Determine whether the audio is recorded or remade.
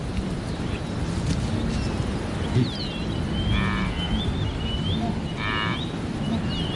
recorded